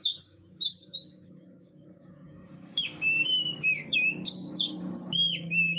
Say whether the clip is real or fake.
fake